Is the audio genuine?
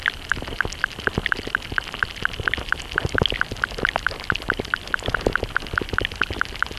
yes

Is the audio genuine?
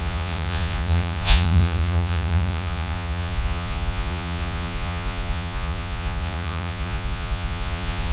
no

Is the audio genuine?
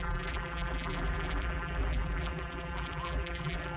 no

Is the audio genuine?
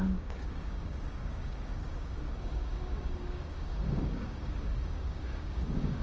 no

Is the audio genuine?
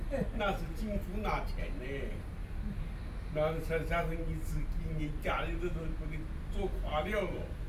yes